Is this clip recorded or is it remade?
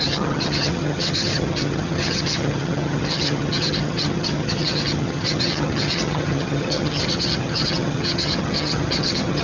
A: remade